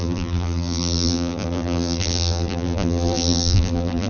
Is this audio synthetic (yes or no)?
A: yes